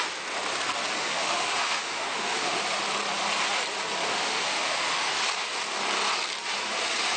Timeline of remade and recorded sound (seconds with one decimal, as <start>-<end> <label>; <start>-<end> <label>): 0.0-1.0 recorded; 1.0-2.6 remade; 2.6-4.1 recorded; 4.1-5.1 remade; 5.1-7.2 recorded